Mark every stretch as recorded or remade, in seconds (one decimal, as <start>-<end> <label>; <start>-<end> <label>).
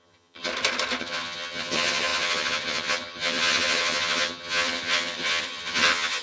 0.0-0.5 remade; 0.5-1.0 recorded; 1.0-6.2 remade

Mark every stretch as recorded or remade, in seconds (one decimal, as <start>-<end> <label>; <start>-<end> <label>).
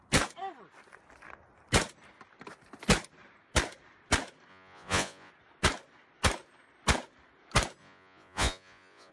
0.0-4.5 recorded; 4.5-5.3 remade; 5.3-7.8 recorded; 7.8-9.1 remade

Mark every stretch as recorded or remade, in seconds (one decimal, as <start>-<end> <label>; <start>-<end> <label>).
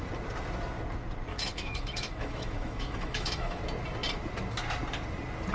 0.0-1.3 recorded; 1.3-3.6 remade; 3.6-5.5 recorded